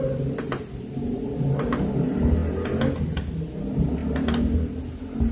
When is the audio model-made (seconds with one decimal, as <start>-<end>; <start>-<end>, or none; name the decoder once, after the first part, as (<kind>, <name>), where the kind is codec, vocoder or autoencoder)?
none